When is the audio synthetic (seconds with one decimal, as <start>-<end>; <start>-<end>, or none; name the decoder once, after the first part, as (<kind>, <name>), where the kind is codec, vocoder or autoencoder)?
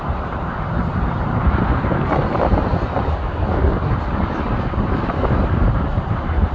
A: 0.0-2.7 (vocoder, BigVGAN v2); 5.4-6.5